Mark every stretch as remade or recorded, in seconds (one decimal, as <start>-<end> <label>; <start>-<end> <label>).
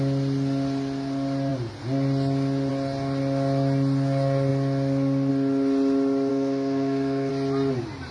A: 0.0-6.3 recorded; 6.3-7.3 remade; 7.3-8.1 recorded